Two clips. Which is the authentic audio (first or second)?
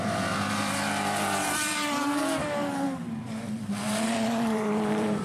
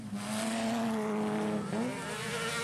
second